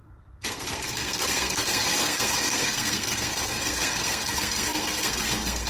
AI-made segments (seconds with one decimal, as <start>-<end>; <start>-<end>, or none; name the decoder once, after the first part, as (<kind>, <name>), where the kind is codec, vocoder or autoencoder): 0.0-5.7 (codec, SNAC)